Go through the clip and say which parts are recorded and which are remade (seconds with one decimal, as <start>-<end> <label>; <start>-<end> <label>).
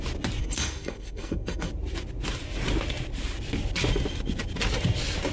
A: 0.0-0.4 recorded; 0.4-1.7 remade; 1.7-5.3 recorded